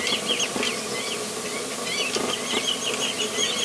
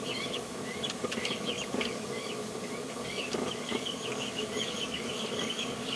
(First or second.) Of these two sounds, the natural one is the first